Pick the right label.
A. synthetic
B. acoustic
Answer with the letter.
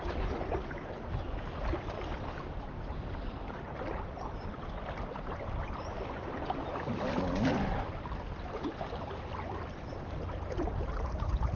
A